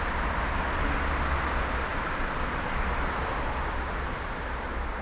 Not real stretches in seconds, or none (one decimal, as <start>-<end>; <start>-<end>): 1.9-5.0